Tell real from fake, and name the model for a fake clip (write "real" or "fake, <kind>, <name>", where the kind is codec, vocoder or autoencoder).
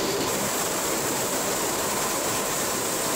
fake, vocoder, BigVGAN v2